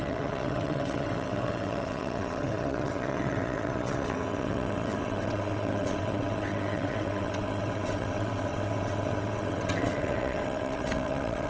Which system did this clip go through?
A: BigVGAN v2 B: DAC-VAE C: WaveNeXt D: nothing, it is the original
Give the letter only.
C